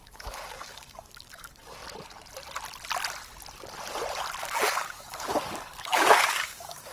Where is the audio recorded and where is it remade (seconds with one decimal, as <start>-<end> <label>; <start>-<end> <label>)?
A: 0.0-1.8 remade; 1.8-4.4 recorded; 4.4-6.9 remade